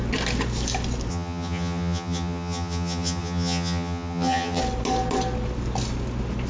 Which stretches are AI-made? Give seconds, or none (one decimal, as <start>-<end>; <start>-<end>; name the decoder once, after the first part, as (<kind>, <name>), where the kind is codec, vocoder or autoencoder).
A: 1.1-4.6 (vocoder, HiFi-GAN)